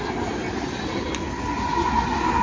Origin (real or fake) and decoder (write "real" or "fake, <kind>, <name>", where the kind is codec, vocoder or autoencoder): real